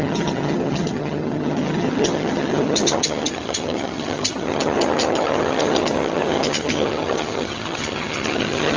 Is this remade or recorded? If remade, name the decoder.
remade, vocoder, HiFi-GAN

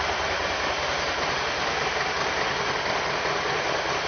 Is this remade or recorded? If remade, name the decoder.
recorded